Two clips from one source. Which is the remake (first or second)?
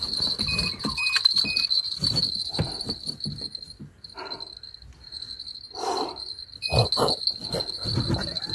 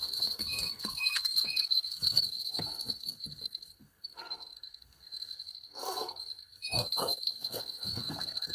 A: second